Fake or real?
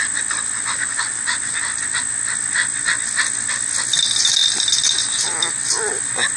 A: real